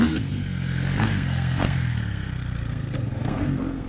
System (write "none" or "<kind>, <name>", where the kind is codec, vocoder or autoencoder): codec, SNAC